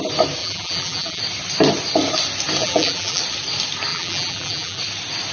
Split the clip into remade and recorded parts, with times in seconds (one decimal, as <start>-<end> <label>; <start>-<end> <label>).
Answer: 0.0-0.4 recorded; 0.4-1.2 remade; 1.2-2.6 recorded; 2.6-3.2 remade; 3.2-3.9 recorded; 3.9-4.8 remade; 4.8-5.3 recorded